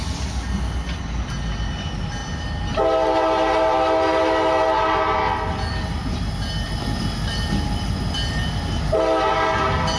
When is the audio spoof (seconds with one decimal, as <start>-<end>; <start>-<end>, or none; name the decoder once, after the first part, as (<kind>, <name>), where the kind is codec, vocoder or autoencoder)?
none